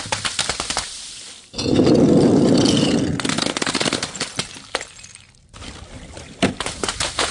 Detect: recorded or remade recorded